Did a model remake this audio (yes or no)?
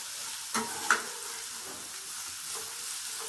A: no